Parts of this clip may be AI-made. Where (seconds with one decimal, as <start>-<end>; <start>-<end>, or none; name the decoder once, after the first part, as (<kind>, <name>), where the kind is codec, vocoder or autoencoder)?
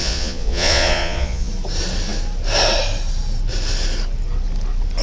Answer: 0.0-1.5 (vocoder, Vocos)